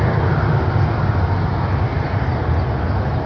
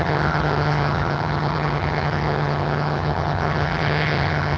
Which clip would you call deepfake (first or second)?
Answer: second